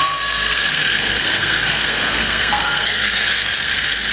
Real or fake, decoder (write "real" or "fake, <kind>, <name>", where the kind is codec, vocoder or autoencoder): fake, codec, SNAC